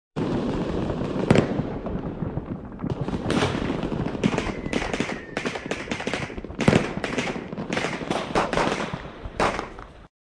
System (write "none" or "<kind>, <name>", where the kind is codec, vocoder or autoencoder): vocoder, BigVGAN v2